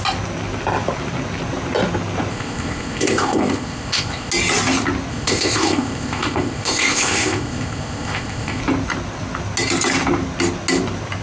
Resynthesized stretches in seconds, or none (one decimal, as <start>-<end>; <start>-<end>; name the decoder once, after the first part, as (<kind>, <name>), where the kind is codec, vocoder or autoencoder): 2.3-4.3 (codec, ZipCodec); 5.1-8.6